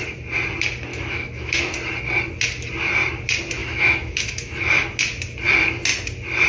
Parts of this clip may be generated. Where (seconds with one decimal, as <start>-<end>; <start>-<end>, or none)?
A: 0.9-1.7; 3.6-5.0